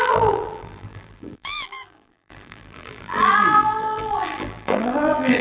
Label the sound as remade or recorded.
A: remade